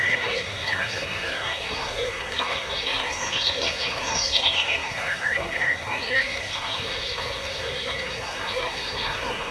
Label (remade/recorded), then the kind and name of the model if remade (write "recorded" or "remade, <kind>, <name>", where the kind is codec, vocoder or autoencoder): remade, codec, SNAC